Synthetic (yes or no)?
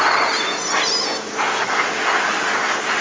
no